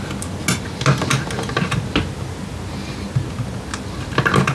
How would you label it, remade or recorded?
recorded